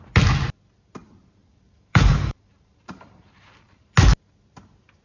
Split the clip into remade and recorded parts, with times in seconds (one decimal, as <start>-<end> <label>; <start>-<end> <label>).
0.0-1.4 recorded; 1.4-3.8 remade; 3.8-5.0 recorded